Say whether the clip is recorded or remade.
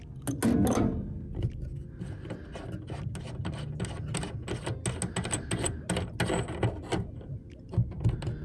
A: recorded